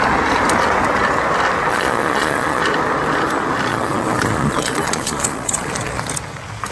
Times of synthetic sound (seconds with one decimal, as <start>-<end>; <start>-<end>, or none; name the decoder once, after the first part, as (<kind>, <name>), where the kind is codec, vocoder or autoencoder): 1.7-2.6 (vocoder, Vocos); 3.7-6.0